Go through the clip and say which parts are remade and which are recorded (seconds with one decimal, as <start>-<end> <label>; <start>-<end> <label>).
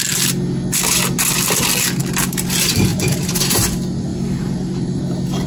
0.0-2.0 recorded; 2.0-2.5 remade; 2.5-2.9 recorded; 2.9-3.6 remade; 3.6-4.1 recorded; 4.1-5.0 remade; 5.0-5.5 recorded